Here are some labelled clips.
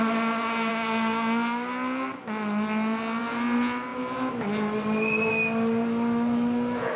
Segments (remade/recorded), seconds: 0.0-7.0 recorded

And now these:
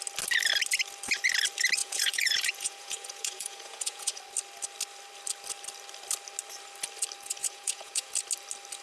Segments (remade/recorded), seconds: 0.0-1.8 recorded; 1.8-4.2 remade; 4.2-7.4 recorded; 7.4-8.1 remade; 8.1-8.8 recorded

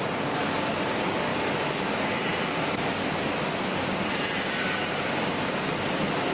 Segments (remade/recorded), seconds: 0.0-1.3 recorded; 1.3-1.9 remade; 1.9-6.3 recorded